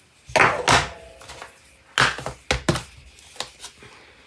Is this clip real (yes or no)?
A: yes